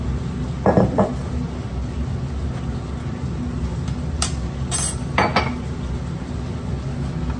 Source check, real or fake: real